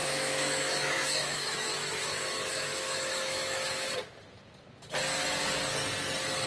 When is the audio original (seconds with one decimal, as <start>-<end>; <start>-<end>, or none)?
3.9-6.5